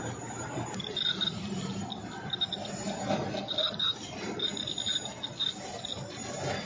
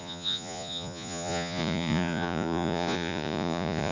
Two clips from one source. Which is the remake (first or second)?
second